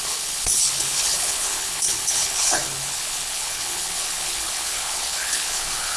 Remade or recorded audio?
remade